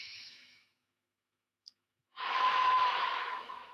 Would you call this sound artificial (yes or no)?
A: yes